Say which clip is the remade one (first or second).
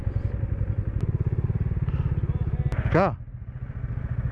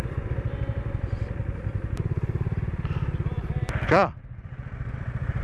second